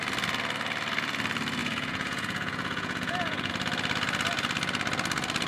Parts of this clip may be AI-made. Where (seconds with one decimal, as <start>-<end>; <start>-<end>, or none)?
1.6-3.5